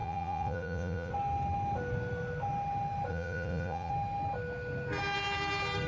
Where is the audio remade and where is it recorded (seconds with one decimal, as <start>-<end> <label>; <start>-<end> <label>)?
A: 0.0-1.1 remade; 1.1-3.1 recorded; 3.1-3.9 remade; 3.9-5.9 recorded

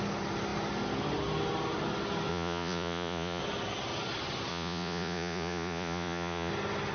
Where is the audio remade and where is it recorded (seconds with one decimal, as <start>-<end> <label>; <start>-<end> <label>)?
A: 0.0-2.3 recorded; 2.3-3.4 remade; 3.4-4.5 recorded; 4.5-6.5 remade; 6.5-6.9 recorded

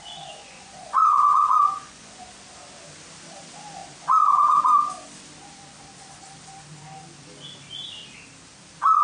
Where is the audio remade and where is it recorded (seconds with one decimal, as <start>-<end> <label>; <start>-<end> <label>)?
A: 0.0-0.4 recorded; 0.4-2.3 remade; 2.3-9.0 recorded